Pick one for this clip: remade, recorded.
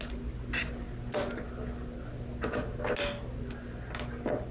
recorded